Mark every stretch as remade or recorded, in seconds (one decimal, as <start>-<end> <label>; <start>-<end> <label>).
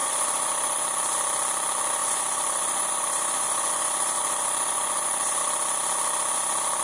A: 0.0-0.8 remade; 0.8-2.0 recorded; 2.0-5.4 remade; 5.4-6.8 recorded